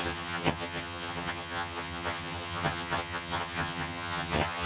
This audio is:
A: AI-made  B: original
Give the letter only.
A